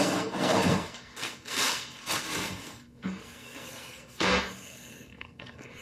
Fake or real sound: fake